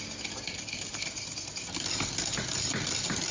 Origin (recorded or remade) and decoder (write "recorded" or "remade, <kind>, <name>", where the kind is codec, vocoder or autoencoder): recorded